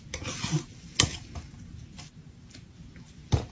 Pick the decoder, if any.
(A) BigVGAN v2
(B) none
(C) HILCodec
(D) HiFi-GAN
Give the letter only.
B